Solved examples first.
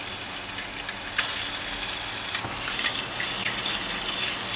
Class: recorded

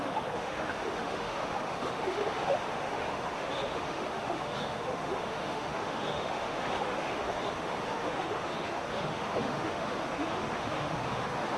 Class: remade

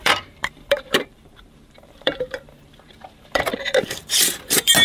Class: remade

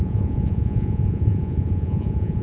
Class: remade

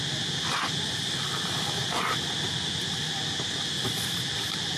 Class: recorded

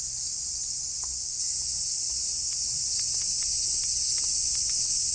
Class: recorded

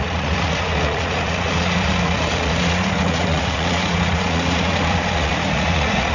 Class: remade